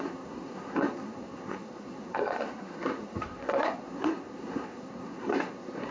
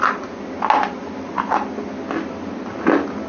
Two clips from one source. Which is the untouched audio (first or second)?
second